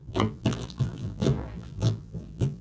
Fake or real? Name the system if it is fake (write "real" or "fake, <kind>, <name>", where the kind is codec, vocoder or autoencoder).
fake, vocoder, BigVGAN v2